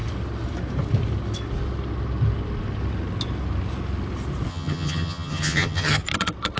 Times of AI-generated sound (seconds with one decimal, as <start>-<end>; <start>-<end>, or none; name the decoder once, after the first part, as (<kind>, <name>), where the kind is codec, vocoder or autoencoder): 4.5-6.0 (vocoder, HiFi-GAN)